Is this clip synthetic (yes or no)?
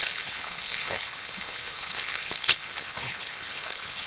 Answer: yes